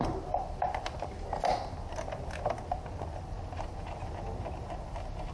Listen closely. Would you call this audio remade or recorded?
recorded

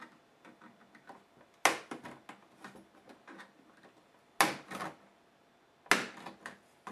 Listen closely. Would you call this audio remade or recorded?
recorded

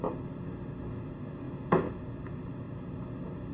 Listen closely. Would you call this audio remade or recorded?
recorded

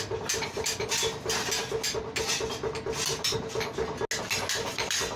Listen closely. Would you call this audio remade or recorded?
recorded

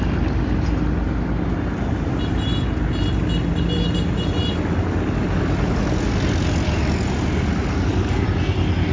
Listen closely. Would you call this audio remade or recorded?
recorded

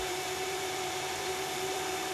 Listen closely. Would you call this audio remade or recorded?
remade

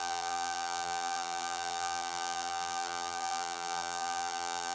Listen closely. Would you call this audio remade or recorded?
remade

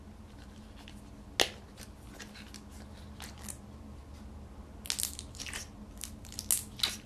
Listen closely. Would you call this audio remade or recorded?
recorded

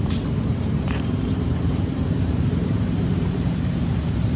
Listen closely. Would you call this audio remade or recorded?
remade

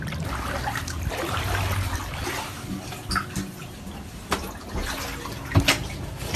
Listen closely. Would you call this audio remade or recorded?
recorded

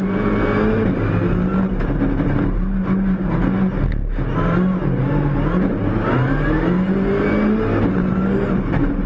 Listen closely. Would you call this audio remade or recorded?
recorded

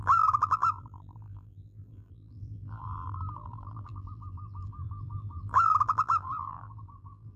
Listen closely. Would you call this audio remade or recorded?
remade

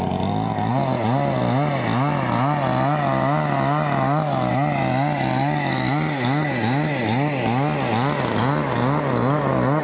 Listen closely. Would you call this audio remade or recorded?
recorded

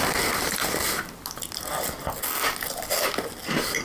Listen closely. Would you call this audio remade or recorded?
recorded